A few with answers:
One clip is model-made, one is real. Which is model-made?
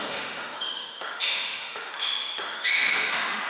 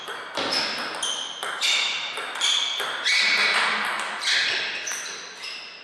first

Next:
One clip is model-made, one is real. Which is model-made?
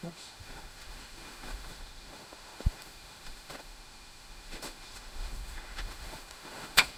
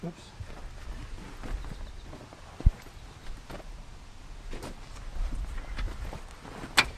first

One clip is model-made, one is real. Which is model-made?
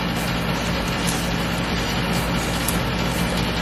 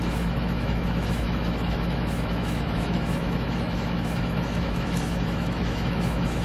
second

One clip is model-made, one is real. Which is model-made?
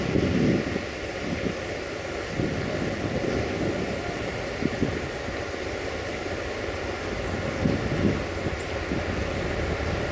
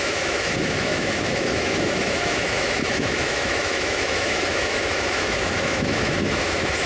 second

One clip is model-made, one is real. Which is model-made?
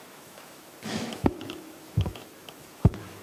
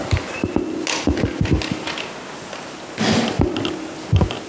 first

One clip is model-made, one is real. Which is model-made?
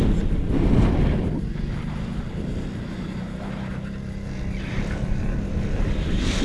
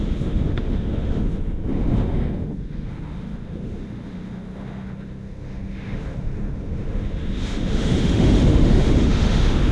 second